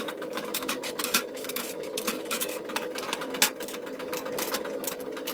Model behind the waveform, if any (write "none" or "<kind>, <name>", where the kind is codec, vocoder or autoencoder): codec, DAC